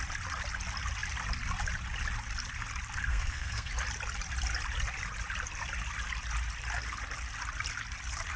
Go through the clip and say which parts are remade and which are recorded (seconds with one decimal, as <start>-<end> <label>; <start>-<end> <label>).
0.0-3.1 recorded; 3.1-3.7 remade; 3.7-8.4 recorded